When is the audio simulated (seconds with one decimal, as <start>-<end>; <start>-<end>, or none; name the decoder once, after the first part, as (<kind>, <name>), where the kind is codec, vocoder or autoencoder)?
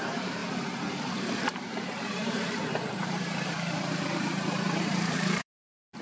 0.0-0.4 (vocoder, BigVGAN v2); 1.2-6.0